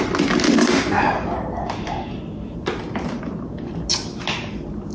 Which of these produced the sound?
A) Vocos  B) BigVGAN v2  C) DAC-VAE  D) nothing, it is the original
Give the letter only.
D